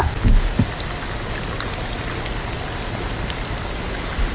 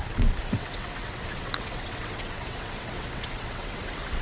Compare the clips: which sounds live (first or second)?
first